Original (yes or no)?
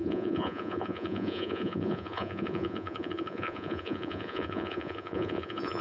no